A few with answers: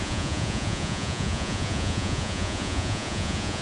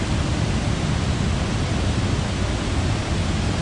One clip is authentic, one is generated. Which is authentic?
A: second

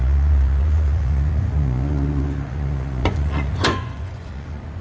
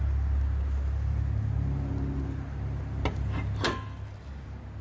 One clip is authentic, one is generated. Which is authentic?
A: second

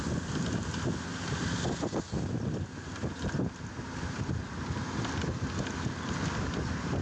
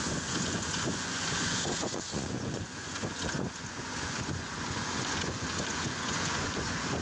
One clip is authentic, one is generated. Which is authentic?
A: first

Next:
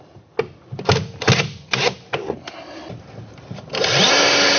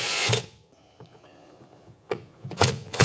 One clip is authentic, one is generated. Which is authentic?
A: first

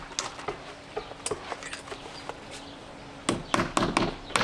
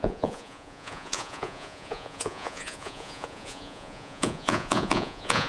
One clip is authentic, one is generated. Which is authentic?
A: first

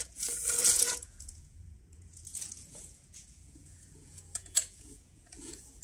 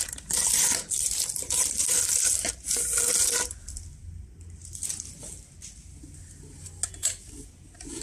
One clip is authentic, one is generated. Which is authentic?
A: second